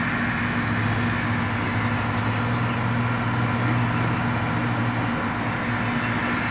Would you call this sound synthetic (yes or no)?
no